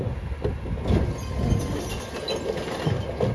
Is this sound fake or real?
real